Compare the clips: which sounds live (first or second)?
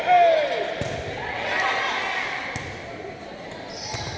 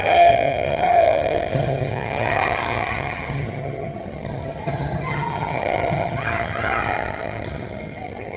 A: first